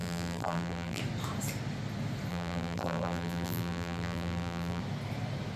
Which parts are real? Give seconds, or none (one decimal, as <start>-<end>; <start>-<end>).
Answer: 1.0-2.3; 4.8-5.6